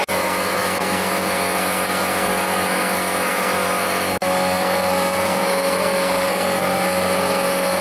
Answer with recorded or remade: remade